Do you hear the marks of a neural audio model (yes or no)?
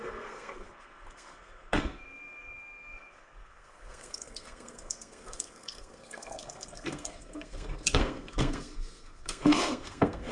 yes